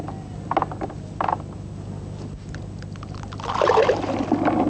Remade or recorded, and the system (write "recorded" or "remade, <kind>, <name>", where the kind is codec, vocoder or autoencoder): recorded